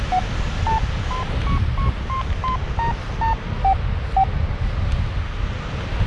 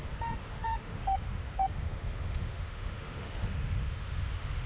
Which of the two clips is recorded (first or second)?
first